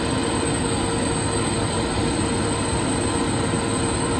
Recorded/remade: recorded